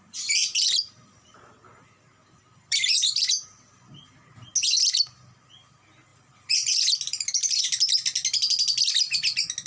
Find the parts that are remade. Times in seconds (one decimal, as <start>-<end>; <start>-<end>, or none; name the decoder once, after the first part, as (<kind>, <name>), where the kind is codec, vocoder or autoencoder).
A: 0.4-3.3 (vocoder, BigVGAN v2); 6.1-7.6

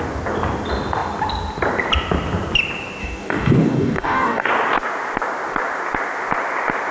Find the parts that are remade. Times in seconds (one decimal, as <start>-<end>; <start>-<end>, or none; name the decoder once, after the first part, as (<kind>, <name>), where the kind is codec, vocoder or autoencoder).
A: 3.0-4.5 (codec, DAC)